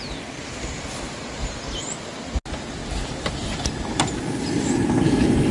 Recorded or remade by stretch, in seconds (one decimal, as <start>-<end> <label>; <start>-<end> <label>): 0.0-5.5 recorded